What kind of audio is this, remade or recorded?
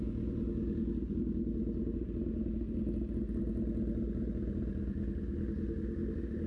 recorded